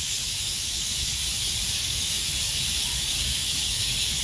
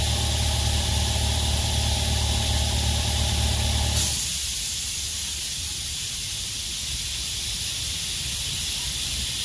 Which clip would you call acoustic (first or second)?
second